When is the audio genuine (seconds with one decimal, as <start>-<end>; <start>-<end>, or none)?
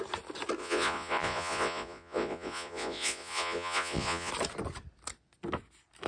0.0-0.6; 4.3-6.1